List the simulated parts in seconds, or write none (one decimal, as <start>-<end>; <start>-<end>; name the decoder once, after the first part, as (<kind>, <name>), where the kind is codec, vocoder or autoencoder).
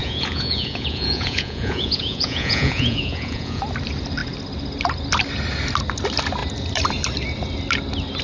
0.0-3.6 (vocoder, Vocos)